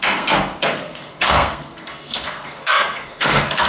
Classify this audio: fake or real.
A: fake